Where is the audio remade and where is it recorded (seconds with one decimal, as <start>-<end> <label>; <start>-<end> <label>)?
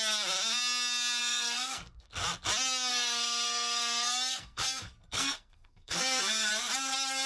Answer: 0.0-1.2 recorded; 1.2-2.1 remade; 2.1-2.9 recorded; 2.9-6.5 remade; 6.5-7.3 recorded